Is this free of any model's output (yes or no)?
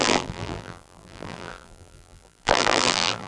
no